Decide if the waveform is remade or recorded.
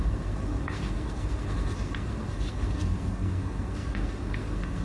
remade